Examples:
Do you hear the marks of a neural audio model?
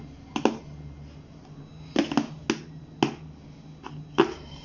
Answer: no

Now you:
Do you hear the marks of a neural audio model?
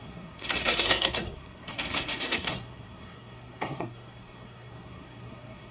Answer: yes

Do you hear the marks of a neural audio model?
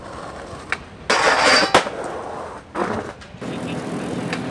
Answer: no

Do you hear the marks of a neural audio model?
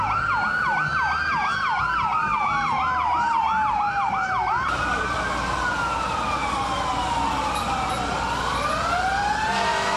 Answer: no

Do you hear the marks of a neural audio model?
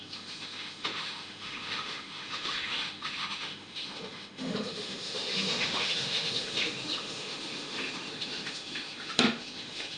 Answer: yes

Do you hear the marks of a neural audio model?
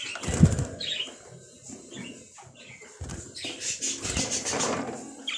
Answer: no